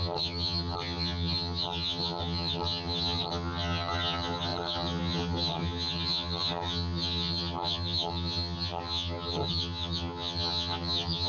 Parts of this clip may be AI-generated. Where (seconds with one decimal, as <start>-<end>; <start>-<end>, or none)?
0.0-11.3